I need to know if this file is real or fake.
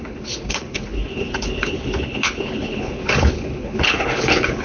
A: fake